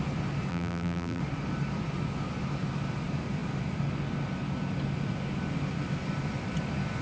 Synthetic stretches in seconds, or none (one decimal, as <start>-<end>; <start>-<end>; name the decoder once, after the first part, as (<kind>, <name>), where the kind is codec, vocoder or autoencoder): 0.5-1.2 (vocoder, BigVGAN v2)